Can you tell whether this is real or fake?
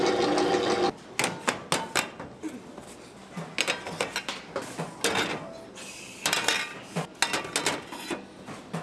real